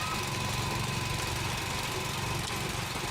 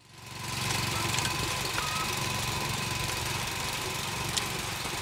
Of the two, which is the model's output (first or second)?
second